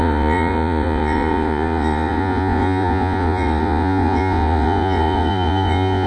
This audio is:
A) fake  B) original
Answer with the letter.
A